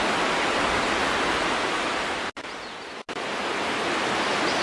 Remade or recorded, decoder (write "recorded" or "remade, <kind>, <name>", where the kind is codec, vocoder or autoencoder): recorded